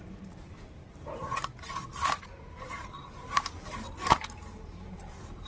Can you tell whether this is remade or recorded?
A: remade